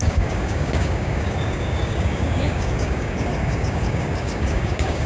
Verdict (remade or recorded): remade